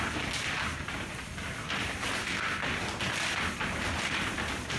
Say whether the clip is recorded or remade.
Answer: recorded